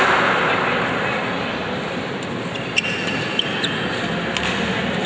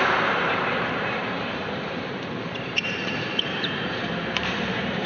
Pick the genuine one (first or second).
first